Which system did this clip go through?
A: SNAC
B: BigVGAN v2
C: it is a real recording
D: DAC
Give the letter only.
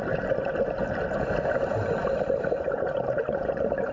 C